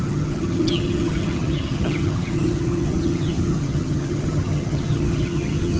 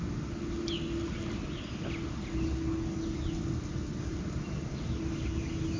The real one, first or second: second